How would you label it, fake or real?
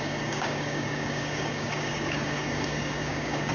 fake